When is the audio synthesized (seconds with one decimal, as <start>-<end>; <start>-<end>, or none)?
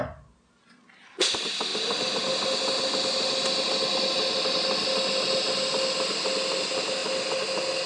none